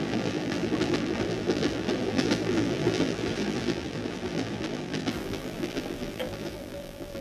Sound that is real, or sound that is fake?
fake